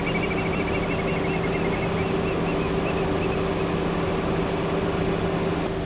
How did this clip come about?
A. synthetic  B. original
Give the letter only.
B